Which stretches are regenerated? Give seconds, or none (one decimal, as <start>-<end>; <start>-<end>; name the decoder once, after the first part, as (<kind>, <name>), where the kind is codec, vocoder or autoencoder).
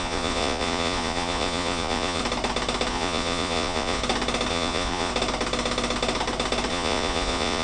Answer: 0.0-2.2 (vocoder, Vocos); 2.9-4.0; 4.5-5.1; 6.7-7.6